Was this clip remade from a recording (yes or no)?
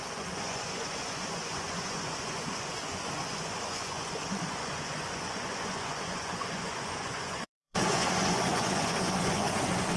yes